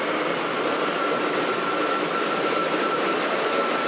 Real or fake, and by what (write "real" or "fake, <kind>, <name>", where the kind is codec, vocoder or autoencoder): real